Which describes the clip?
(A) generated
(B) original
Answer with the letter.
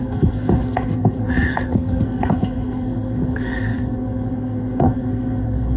A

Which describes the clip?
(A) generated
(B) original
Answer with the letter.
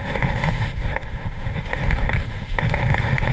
A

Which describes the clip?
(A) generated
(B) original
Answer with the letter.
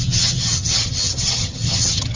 A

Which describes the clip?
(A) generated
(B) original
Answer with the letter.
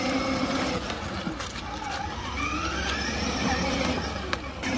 B